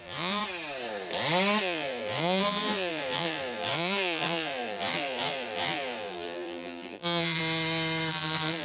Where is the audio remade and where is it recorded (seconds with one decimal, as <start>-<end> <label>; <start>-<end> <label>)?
0.0-0.4 remade; 0.4-1.6 recorded; 1.6-7.4 remade; 7.4-8.1 recorded; 8.1-8.6 remade